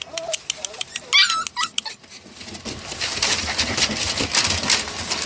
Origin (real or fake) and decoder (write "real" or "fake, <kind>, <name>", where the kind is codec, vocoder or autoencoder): real